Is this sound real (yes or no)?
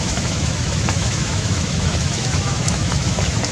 no